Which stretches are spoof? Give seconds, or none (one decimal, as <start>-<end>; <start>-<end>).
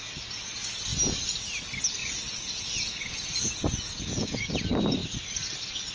2.0-4.5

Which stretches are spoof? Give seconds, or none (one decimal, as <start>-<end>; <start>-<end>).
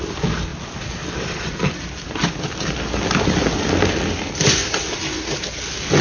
none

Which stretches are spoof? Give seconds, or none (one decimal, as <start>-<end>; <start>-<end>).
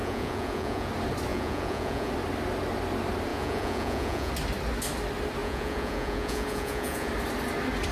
0.0-0.9; 1.3-2.1; 3.3-4.3; 5.4-7.1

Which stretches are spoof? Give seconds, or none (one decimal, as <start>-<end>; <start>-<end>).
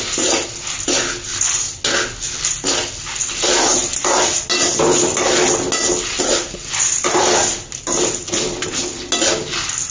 none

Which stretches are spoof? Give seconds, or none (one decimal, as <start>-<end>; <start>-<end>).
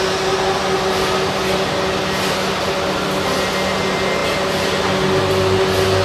none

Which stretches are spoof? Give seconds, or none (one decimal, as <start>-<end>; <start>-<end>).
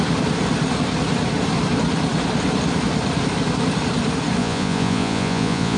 4.4-5.8